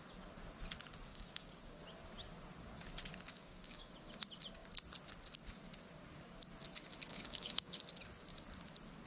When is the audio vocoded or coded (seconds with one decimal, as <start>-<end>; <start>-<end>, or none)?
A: 1.1-1.8; 3.3-3.9; 7.1-7.8